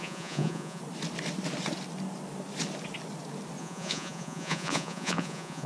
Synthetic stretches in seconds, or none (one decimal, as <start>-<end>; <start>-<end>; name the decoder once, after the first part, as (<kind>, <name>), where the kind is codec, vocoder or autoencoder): 0.0-0.8 (vocoder, Vocos); 3.6-5.7